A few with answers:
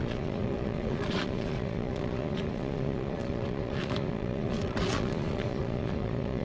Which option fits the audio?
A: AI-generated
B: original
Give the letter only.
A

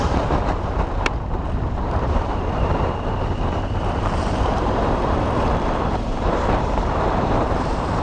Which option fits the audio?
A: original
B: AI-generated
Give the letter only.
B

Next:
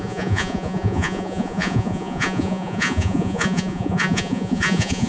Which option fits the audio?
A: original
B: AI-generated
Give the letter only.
B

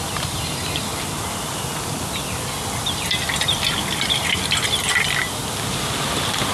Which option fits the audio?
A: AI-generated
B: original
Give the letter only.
B